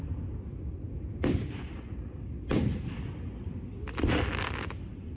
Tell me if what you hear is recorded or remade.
recorded